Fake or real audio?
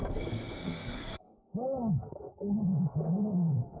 fake